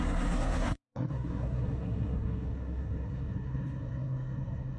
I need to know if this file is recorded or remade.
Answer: remade